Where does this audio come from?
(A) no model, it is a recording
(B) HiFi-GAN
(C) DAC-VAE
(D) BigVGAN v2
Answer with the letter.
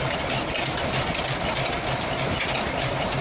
A